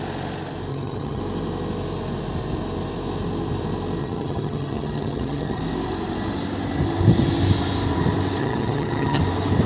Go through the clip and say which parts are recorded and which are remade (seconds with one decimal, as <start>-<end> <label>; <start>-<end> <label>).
0.0-0.7 recorded; 0.7-1.2 remade; 1.2-4.0 recorded; 4.0-5.6 remade; 5.6-8.4 recorded; 8.4-9.2 remade; 9.2-9.7 recorded